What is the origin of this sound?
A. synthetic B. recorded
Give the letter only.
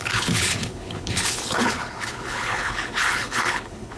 A